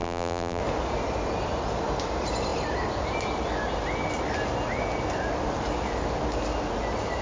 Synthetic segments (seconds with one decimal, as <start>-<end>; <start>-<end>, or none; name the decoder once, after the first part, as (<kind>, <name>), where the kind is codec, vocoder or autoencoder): 0.0-0.6 (vocoder, BigVGAN v2)

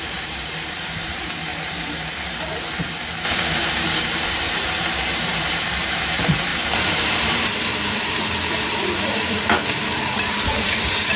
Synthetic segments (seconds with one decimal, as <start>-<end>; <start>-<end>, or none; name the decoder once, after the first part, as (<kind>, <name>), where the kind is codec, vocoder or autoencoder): 0.0-1.5 (vocoder, BigVGAN v2); 2.8-11.2

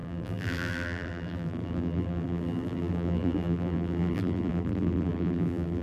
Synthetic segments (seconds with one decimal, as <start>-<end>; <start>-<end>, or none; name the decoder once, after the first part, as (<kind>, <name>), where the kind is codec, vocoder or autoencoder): 0.0-5.8 (vocoder, BigVGAN v2)

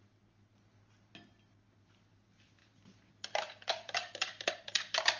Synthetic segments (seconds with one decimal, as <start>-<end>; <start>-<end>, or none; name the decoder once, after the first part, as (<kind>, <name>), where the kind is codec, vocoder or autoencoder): none

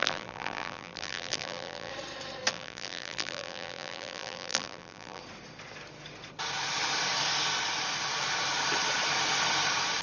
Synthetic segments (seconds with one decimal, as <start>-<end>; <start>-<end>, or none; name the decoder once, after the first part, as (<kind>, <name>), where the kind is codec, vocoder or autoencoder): 0.0-1.9 (vocoder, BigVGAN v2); 2.5-5.2

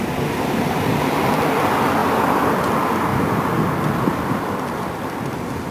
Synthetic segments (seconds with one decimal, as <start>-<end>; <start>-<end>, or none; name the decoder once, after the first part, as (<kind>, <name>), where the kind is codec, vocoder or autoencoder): 2.0-2.7 (vocoder, BigVGAN v2)

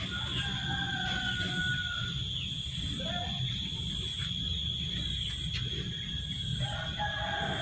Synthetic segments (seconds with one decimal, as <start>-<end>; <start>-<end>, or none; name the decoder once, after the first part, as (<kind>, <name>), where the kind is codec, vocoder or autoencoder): 6.5-7.0 (vocoder, BigVGAN v2)

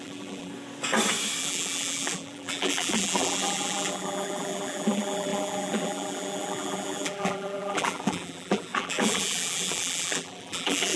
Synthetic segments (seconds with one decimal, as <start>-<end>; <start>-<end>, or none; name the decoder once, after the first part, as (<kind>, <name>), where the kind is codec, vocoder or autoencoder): 0.0-0.5 (vocoder, BigVGAN v2); 1.4-11.0